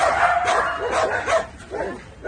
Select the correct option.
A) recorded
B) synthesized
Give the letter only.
A